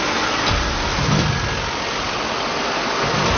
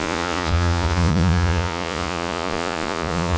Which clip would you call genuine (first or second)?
first